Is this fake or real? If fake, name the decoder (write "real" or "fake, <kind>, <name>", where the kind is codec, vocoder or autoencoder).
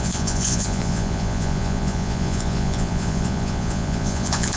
fake, vocoder, Vocos